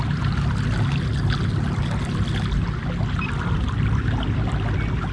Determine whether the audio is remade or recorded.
recorded